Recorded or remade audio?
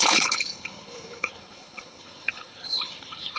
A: remade